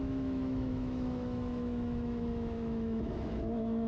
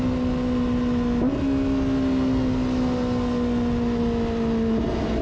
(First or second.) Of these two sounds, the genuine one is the second